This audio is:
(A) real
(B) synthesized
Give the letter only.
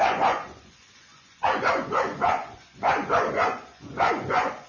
B